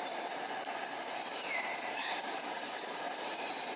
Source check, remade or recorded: remade